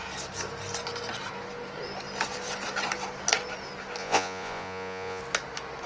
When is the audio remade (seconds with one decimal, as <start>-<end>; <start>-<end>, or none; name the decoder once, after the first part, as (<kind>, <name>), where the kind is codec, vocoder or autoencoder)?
4.0-5.2 (vocoder, Vocos)